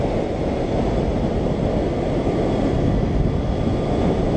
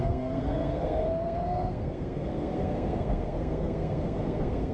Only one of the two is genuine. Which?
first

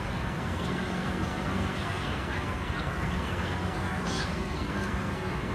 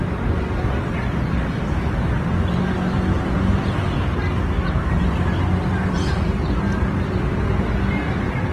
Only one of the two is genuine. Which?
second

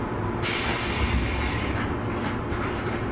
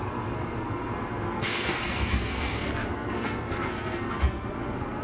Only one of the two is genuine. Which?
first